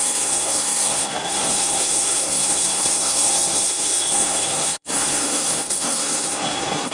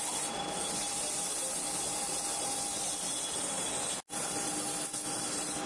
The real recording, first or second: second